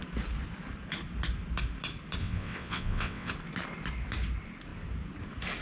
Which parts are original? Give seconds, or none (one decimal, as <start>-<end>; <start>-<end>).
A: 0.0-2.2; 3.3-5.6